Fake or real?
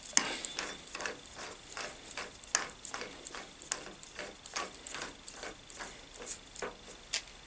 real